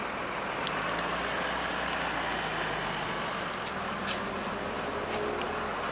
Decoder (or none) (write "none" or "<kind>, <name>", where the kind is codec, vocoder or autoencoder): none